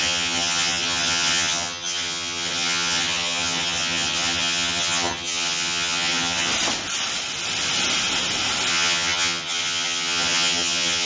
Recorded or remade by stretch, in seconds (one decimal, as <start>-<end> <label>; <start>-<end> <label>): 0.0-6.5 remade; 6.5-8.7 recorded; 8.7-11.1 remade